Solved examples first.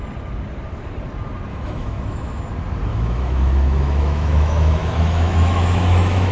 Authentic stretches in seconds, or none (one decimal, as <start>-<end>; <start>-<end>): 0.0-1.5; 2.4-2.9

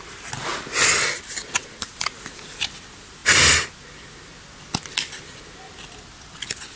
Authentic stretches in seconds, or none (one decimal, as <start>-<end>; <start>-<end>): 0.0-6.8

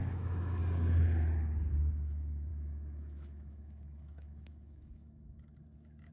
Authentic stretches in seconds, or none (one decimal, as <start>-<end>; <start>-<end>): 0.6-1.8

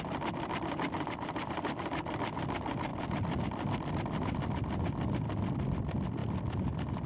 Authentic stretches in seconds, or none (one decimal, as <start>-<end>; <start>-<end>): 0.0-7.1

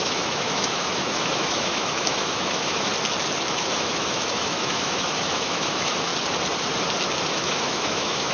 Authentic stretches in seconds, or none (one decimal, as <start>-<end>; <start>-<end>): 2.9-3.5; 6.1-7.3

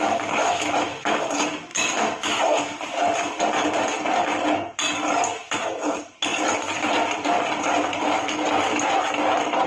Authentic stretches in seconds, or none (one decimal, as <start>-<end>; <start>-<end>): 0.0-0.4; 1.2-1.7; 2.4-9.7